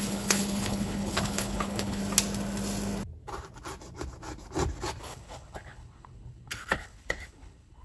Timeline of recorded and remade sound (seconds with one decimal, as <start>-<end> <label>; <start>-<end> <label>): 0.0-2.0 remade; 2.0-5.0 recorded; 5.0-7.8 remade